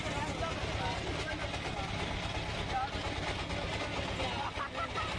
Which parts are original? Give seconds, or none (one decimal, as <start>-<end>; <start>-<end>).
0.0-5.2

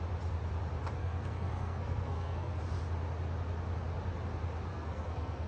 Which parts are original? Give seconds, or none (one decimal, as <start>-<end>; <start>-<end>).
0.0-1.0; 2.6-4.7

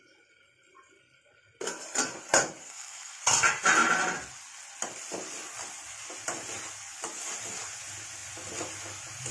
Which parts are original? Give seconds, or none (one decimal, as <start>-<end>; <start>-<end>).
0.0-2.6; 3.2-9.3

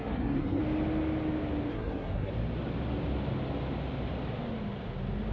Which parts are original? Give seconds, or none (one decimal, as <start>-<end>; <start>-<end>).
0.6-1.7; 2.3-5.3

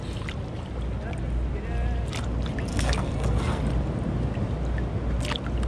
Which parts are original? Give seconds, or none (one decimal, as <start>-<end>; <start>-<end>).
0.0-2.7; 3.6-5.7

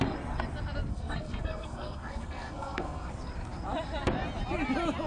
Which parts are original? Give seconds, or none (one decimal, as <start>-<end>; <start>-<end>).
0.0-0.9; 3.1-5.1

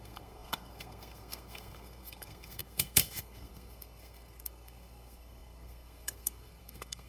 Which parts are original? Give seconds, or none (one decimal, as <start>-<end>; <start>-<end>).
none